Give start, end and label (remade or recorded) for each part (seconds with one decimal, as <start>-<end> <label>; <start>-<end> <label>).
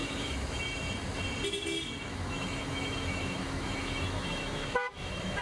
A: 0.0-0.6 remade; 0.6-2.1 recorded; 2.1-5.4 remade